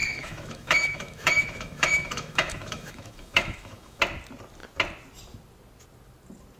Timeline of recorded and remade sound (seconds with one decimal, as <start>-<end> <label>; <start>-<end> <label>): 0.0-4.0 remade; 4.0-6.6 recorded